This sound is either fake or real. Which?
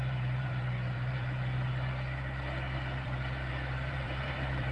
fake